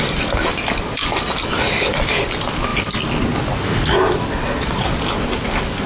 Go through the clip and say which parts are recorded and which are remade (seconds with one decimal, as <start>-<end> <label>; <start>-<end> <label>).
0.0-5.9 recorded